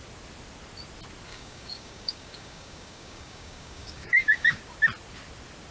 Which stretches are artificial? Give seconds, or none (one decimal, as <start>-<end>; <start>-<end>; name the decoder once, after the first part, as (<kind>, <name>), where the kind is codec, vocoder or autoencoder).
1.3-4.6 (codec, DAC)